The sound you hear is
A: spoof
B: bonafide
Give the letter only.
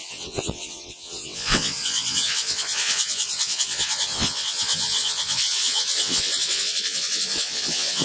A